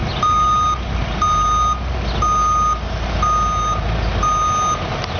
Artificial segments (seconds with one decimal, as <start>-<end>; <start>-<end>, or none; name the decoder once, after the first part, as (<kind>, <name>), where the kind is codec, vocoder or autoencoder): none